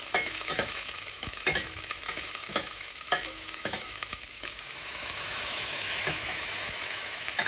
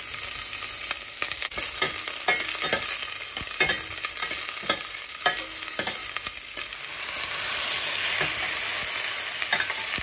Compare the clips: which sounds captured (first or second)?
second